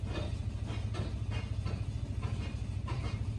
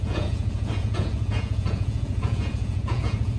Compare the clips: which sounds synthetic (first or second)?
second